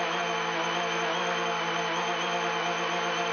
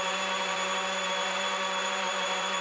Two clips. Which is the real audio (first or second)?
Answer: first